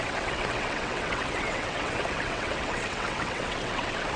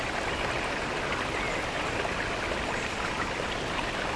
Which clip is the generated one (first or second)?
first